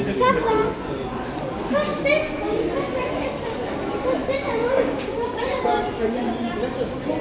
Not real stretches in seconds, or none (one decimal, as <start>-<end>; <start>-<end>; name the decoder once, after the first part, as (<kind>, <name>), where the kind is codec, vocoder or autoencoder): 4.6-5.6 (codec, DAC)